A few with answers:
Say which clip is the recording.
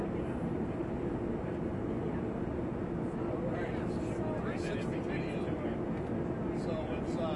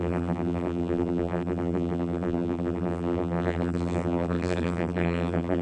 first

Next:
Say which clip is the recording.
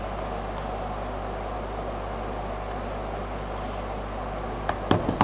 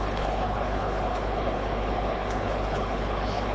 first